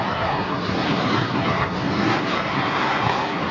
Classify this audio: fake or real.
fake